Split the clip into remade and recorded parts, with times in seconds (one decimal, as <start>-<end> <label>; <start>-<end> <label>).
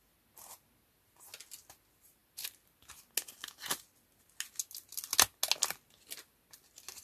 0.0-7.0 recorded